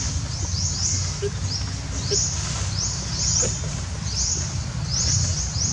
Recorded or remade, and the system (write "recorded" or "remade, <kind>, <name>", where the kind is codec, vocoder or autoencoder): recorded